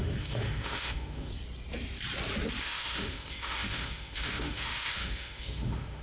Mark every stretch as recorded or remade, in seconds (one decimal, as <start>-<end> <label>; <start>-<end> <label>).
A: 0.0-1.3 remade; 1.3-2.6 recorded; 2.6-6.0 remade

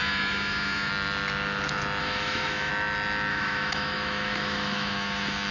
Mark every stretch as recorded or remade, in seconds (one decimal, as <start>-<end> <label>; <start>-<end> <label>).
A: 0.0-0.9 remade; 0.9-2.0 recorded; 2.0-2.7 remade; 2.7-3.3 recorded; 3.3-5.5 remade

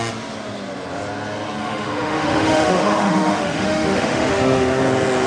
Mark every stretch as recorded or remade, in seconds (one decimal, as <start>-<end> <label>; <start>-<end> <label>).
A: 0.0-1.6 recorded; 1.6-4.8 remade; 4.8-5.3 recorded

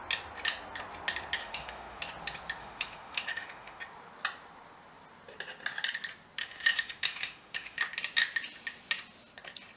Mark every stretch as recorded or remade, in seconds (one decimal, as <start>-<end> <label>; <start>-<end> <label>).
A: 0.0-1.4 recorded; 1.4-2.0 remade; 2.0-2.6 recorded; 2.6-3.8 remade; 3.8-6.4 recorded; 6.4-7.8 remade; 7.8-9.8 recorded

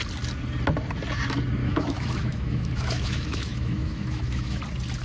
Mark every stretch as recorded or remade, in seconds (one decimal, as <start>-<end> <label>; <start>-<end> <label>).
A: 0.0-1.6 recorded; 1.6-4.6 remade; 4.6-5.0 recorded

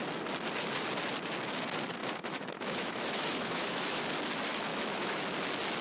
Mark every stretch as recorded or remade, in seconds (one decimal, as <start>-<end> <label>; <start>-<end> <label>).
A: 0.0-2.0 recorded; 2.0-4.0 remade; 4.0-4.7 recorded; 4.7-5.2 remade; 5.2-5.8 recorded

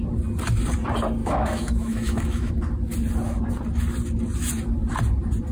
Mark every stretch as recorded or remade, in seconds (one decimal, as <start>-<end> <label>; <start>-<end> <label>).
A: 0.0-1.2 recorded; 1.2-2.5 remade; 2.5-5.5 recorded